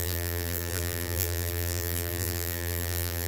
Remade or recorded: remade